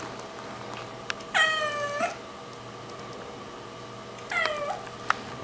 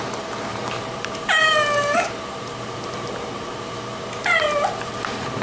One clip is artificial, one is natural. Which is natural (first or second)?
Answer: first